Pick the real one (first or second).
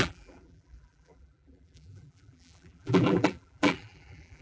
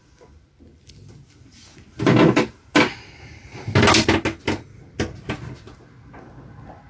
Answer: second